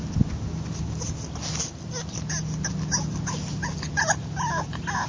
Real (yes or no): yes